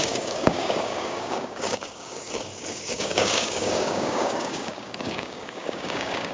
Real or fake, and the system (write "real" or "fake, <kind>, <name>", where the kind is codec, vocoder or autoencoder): fake, codec, DAC